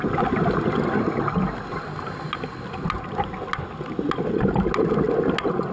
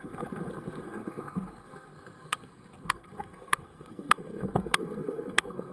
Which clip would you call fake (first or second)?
second